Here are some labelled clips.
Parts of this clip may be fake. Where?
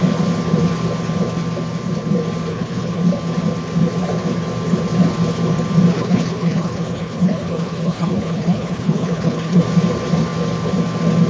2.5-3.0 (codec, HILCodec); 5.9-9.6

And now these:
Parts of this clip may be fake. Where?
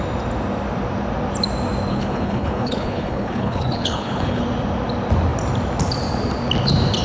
1.9-4.4 (codec, HILCodec)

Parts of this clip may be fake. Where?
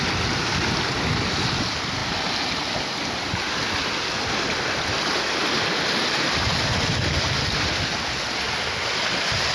none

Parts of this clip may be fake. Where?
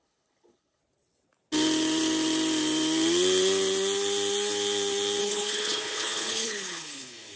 0.0-0.8 (codec, HILCodec); 5.2-7.4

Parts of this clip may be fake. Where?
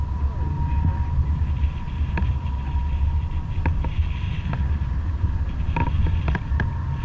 none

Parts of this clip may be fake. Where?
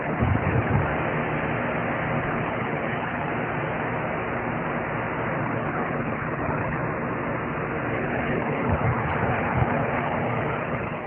0.0-0.9 (codec, HILCodec); 2.2-3.3; 5.4-6.8; 7.9-11.1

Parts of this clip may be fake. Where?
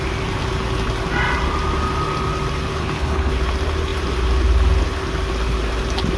2.8-3.3 (codec, HILCodec)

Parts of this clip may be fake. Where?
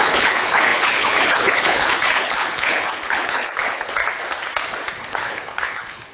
0.0-4.0 (codec, HILCodec); 5.0-6.1